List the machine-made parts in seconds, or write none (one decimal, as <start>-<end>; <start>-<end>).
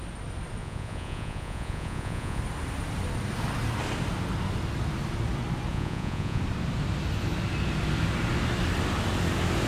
0.6-2.4; 5.7-6.4